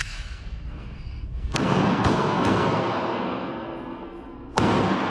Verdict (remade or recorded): remade